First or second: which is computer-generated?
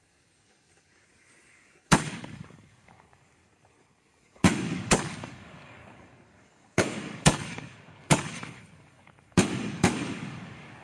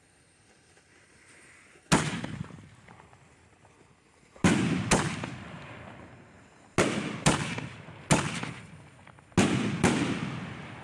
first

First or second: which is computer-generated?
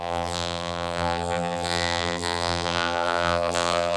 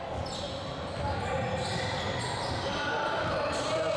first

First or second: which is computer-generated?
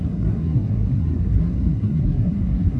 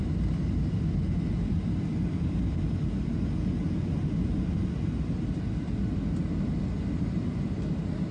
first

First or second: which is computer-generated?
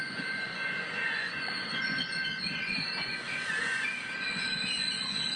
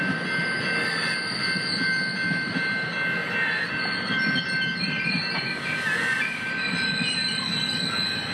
first